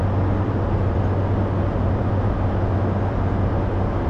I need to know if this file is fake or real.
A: real